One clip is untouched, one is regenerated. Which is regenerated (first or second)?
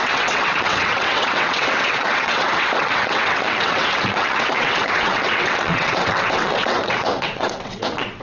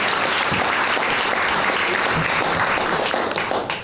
first